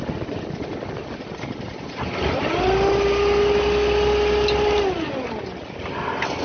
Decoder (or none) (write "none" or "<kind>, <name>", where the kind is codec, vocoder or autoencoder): none